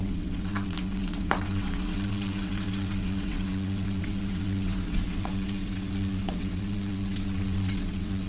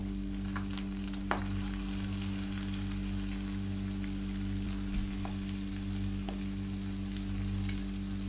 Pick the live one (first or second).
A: second